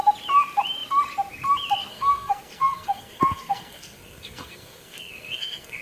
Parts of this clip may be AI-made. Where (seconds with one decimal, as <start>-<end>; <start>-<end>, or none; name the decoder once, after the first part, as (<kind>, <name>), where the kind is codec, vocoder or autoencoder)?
1.9-5.8 (codec, SNAC)